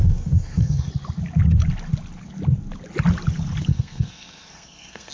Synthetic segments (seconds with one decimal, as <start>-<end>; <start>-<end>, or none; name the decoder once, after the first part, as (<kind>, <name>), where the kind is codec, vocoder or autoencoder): 0.0-0.9 (codec, SNAC); 3.7-5.1